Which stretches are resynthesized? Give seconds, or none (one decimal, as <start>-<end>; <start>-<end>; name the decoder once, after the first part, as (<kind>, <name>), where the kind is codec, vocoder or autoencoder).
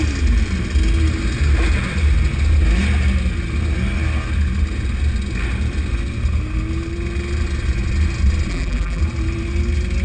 8.5-9.0 (vocoder, BigVGAN v2)